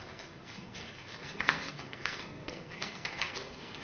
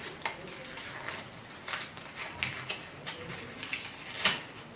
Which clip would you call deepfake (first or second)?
first